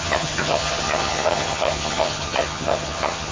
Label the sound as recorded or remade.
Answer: remade